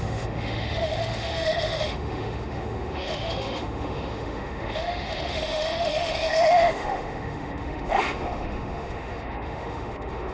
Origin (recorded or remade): remade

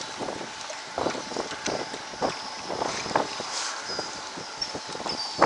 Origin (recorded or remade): recorded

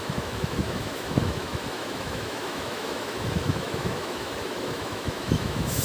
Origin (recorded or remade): remade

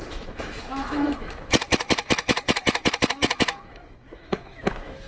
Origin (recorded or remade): remade